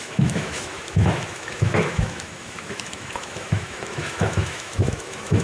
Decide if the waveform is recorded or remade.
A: remade